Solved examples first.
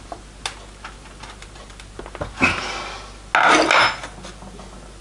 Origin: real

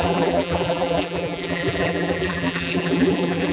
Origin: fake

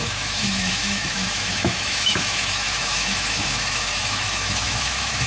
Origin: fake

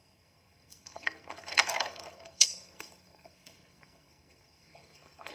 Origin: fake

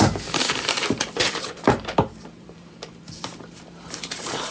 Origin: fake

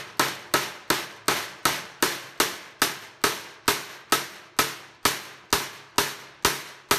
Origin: real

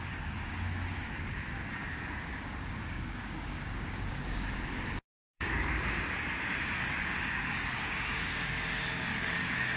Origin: fake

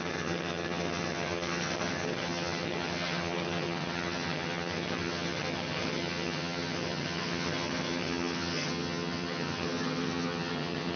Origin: fake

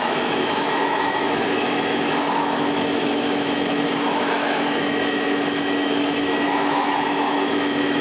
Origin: fake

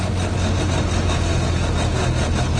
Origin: real